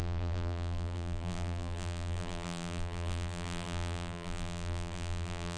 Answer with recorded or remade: remade